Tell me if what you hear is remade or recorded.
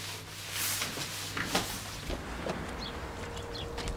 recorded